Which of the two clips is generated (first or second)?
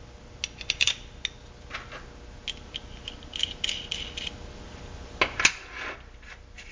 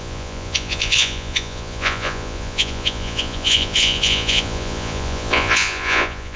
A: second